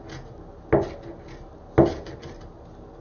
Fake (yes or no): no